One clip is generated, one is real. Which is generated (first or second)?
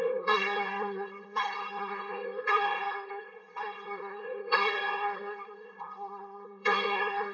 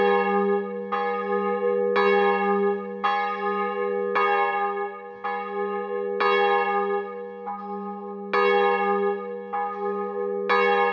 first